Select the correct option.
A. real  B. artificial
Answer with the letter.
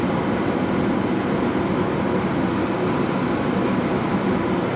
A